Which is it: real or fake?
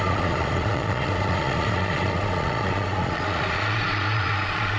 fake